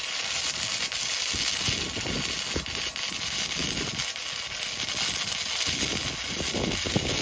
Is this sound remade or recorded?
recorded